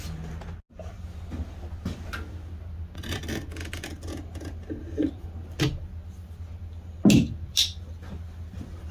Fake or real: real